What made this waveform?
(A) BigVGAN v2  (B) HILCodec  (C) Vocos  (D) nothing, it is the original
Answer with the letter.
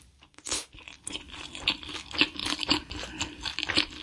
D